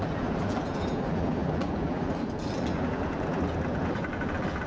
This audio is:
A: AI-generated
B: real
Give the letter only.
A